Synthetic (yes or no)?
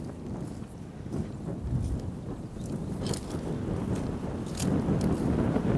no